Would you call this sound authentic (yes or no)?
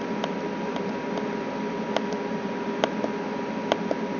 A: yes